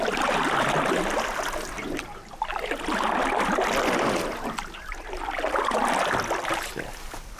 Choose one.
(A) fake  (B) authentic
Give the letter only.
B